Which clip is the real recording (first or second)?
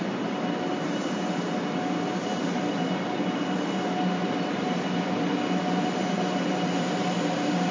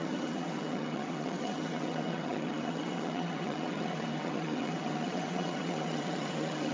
first